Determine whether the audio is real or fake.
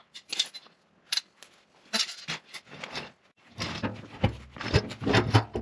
real